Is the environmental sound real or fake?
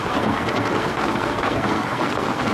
fake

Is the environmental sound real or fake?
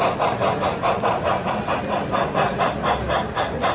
real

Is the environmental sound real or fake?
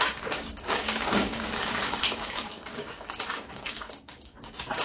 fake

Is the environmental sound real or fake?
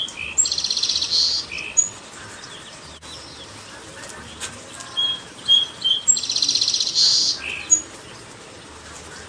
real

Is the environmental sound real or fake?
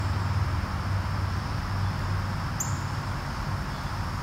real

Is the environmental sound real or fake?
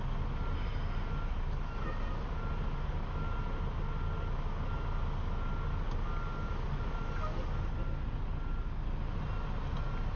real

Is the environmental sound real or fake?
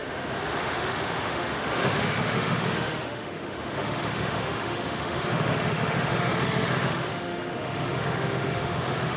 fake